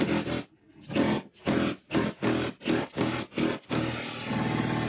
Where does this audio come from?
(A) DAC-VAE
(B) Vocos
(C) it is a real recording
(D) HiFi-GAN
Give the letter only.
C